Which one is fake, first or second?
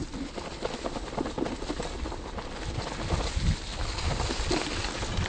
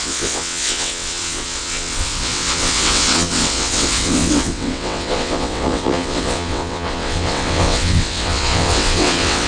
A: second